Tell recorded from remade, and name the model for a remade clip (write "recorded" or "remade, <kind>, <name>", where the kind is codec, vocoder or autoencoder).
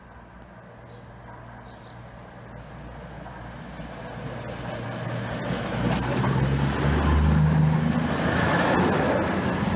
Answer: recorded